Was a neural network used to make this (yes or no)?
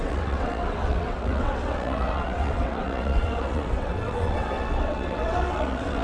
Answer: yes